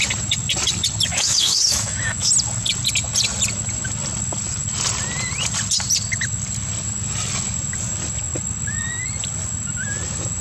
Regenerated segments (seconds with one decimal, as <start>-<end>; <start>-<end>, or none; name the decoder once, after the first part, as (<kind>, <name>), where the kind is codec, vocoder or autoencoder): 1.1-2.3 (autoencoder, DAC-VAE)